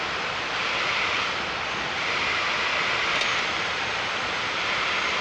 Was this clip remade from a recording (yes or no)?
no